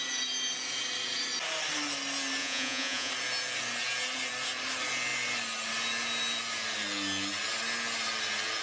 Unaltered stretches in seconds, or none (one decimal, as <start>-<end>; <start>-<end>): 0.0-2.4; 3.1-8.6